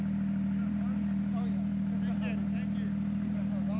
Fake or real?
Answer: real